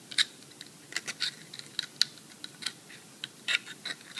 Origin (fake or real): real